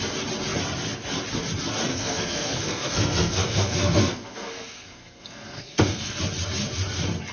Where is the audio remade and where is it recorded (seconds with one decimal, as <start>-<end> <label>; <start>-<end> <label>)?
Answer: 0.0-1.9 recorded; 1.9-6.2 remade; 6.2-7.3 recorded